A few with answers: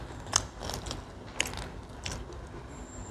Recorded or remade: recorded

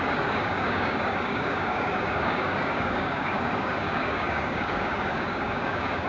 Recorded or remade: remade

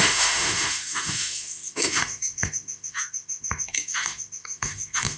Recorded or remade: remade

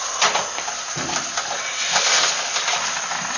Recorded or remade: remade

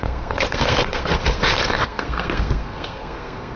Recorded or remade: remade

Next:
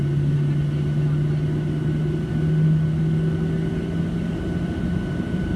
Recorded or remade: recorded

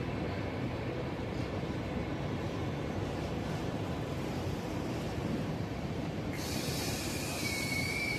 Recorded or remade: remade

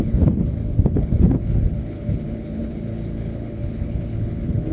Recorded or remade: remade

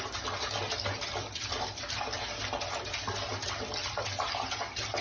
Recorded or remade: recorded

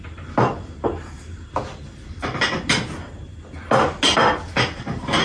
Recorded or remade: recorded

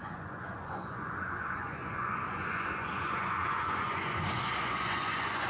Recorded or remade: remade